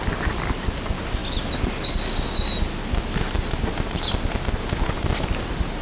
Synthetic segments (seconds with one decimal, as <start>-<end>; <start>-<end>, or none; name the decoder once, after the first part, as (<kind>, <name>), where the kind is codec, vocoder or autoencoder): none